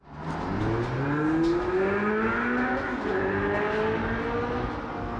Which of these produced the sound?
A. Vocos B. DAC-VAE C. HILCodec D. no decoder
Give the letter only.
D